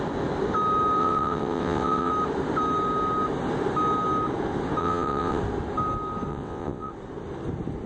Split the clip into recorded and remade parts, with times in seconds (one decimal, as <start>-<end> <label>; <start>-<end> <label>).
0.0-1.0 recorded; 1.0-2.1 remade; 2.1-4.8 recorded; 4.8-5.4 remade; 5.4-6.3 recorded; 6.3-6.9 remade; 6.9-7.9 recorded